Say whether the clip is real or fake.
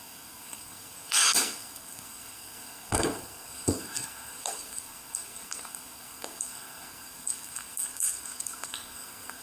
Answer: fake